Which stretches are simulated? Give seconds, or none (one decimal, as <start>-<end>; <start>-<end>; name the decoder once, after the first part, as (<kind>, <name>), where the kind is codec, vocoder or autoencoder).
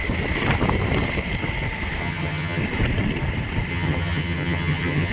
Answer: 2.0-2.6 (vocoder, HiFi-GAN); 3.7-5.1